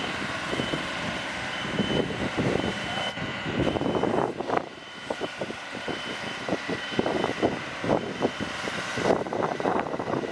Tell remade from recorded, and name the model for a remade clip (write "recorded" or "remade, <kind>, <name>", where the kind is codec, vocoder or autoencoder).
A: remade, vocoder, BigVGAN v2